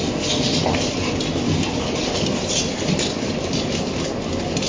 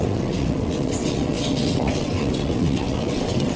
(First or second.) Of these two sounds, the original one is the first